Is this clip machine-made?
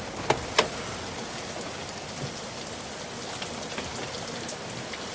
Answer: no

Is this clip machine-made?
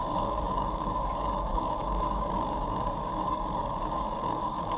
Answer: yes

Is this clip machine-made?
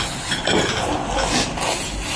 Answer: no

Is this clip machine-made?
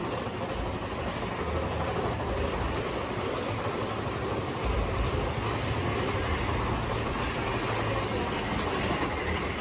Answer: no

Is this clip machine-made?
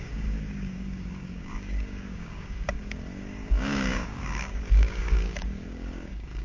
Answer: yes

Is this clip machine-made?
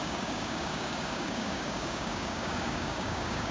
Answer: yes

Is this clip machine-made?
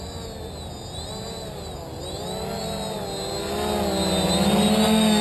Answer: no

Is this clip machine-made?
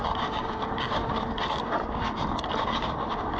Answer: yes